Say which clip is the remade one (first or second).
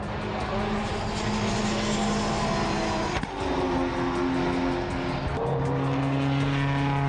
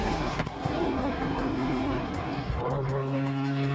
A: second